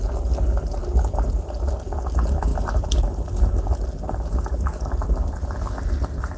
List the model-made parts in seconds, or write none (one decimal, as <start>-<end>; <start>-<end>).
none